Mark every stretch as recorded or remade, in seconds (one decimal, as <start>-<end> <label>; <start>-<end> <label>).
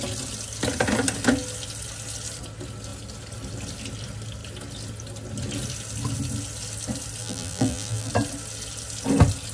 0.0-7.2 recorded; 7.2-8.1 remade; 8.1-9.5 recorded